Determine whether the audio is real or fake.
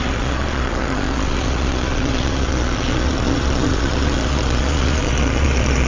fake